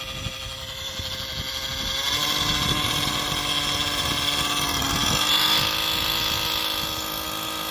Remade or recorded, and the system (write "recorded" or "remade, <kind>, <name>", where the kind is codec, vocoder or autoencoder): recorded